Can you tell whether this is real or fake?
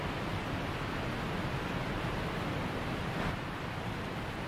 real